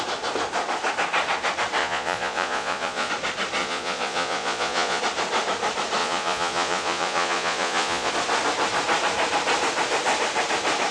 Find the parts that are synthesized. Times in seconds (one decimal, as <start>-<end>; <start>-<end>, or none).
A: 1.8-3.1; 3.6-5.0; 6.0-8.1